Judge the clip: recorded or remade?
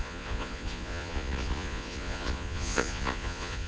remade